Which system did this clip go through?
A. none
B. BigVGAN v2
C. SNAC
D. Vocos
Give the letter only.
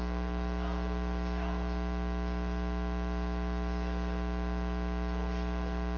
B